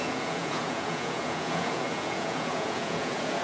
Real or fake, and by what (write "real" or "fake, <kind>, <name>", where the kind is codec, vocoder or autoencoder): fake, vocoder, Vocos